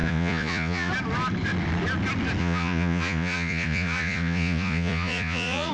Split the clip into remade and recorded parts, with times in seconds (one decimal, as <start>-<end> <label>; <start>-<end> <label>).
0.0-0.9 remade; 0.9-2.4 recorded; 2.4-5.7 remade